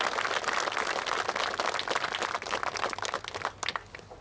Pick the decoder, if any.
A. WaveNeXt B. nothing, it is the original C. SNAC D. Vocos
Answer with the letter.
B